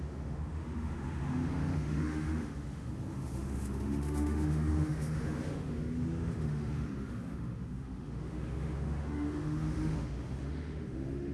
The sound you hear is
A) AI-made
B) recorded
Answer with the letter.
A